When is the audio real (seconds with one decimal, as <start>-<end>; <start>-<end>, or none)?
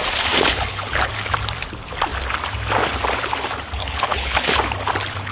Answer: 0.0-0.5; 1.1-3.8; 4.4-5.3